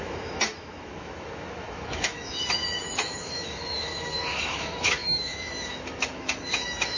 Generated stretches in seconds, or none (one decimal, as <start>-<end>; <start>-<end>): 0.0-7.0